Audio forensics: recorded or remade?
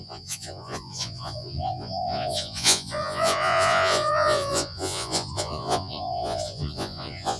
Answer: remade